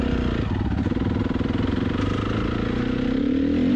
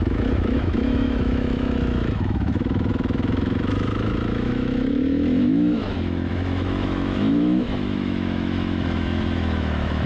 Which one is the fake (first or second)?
second